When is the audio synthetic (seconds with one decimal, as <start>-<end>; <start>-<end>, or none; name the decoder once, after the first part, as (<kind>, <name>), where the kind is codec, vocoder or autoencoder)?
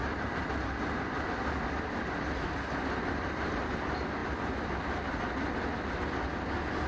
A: none